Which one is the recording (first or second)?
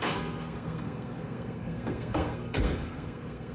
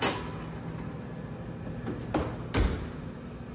second